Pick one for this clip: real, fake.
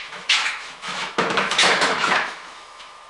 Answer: fake